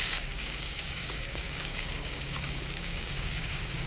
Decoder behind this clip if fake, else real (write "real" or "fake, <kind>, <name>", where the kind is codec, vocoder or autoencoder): fake, codec, DAC